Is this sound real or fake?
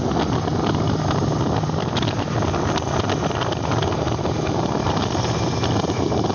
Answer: real